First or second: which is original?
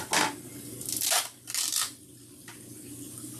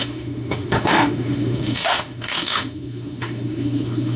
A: first